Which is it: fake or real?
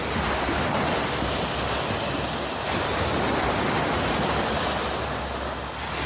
real